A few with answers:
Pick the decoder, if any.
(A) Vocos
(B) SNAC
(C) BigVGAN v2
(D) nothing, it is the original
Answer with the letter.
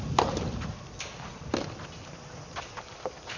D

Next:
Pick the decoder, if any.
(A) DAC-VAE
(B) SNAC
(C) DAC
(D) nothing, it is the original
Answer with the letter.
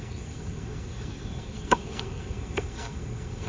B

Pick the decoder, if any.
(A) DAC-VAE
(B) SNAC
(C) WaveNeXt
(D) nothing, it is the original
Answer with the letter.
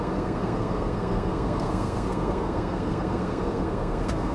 B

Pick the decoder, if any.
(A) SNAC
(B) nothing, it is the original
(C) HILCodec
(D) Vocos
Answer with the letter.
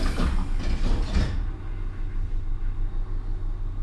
B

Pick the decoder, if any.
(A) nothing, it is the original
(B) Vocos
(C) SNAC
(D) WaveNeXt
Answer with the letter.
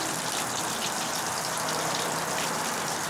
A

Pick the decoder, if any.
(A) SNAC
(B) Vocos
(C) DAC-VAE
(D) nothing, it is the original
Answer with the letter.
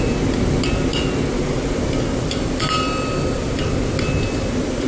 D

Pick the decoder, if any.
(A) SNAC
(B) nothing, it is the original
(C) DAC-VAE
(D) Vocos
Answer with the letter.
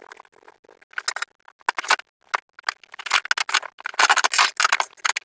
B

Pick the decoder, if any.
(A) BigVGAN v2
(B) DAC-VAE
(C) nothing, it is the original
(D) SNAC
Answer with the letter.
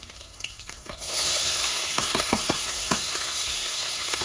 D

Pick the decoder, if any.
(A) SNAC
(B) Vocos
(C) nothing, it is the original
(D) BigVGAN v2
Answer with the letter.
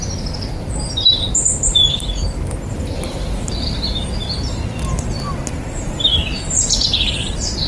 C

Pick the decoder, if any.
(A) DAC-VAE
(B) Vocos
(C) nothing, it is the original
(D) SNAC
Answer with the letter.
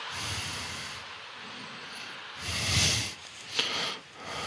C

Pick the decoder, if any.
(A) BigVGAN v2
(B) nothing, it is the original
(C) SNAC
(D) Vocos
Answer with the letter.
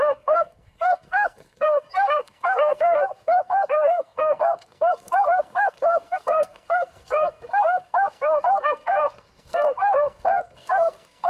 C